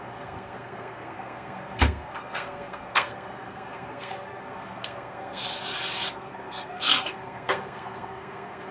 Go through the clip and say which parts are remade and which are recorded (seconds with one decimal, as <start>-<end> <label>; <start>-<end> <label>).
0.0-5.6 remade; 5.6-6.1 recorded; 6.1-8.7 remade